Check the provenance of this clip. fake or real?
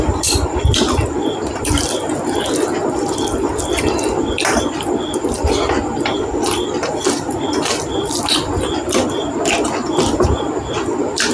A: fake